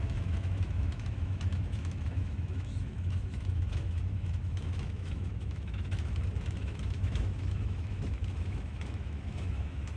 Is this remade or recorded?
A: remade